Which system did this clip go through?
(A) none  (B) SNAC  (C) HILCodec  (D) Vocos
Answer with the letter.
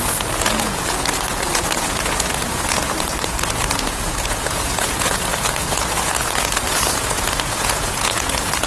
D